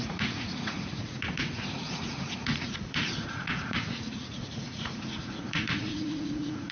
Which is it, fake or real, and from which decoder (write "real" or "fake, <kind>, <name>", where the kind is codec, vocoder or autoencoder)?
fake, vocoder, Vocos